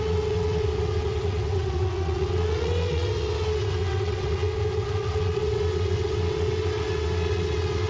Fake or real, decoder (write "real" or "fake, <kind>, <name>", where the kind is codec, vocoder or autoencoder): fake, vocoder, WaveNeXt